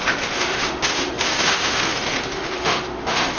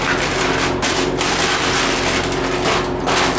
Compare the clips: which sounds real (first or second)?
second